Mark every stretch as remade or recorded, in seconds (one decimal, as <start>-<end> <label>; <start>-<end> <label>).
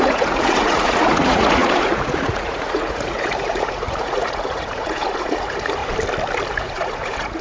0.0-5.8 remade; 5.8-6.5 recorded; 6.5-7.4 remade